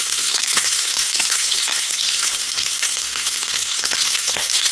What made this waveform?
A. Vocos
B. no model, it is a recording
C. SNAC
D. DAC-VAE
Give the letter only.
C